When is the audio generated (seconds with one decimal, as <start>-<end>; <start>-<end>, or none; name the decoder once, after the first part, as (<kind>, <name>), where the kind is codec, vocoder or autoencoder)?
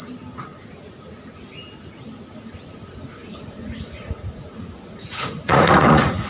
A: 3.1-6.3 (vocoder, Vocos)